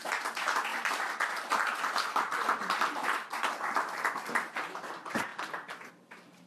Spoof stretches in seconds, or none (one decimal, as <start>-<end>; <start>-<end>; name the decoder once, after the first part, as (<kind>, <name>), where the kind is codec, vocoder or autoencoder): 0.7-4.0 (vocoder, BigVGAN v2)